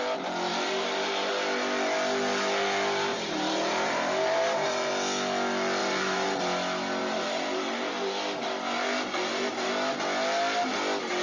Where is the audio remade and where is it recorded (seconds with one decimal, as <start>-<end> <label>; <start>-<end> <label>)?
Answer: 0.0-0.5 recorded; 0.5-1.3 remade; 1.3-3.1 recorded; 3.1-4.9 remade; 4.9-5.8 recorded; 5.8-6.4 remade; 6.4-7.0 recorded; 7.0-9.7 remade; 9.7-11.2 recorded